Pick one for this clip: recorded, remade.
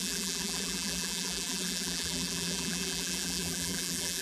remade